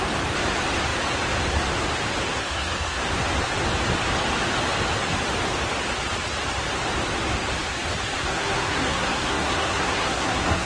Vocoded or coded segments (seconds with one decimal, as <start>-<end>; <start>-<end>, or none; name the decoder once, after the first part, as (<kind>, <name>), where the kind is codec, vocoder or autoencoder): 2.3-3.0 (codec, SNAC); 8.3-10.7